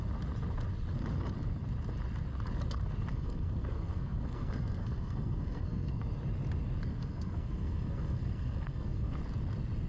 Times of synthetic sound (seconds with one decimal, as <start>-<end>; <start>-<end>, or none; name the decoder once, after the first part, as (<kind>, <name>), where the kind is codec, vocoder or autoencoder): 3.1-6.0 (codec, SNAC); 6.9-9.2